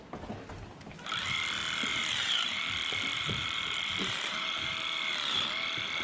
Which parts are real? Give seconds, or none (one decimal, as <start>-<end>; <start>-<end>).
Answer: 0.0-1.9; 2.6-3.1; 4.7-6.0